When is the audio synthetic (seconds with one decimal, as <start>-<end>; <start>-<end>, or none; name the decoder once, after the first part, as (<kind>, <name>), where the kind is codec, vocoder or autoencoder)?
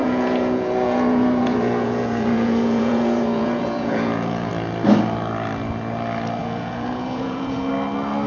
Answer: 0.0-4.5 (vocoder, Vocos); 6.4-7.7